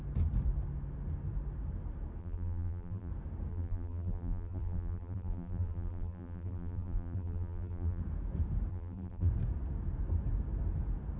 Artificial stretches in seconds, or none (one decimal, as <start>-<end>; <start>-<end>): 2.2-3.1; 3.5-8.0; 8.7-9.3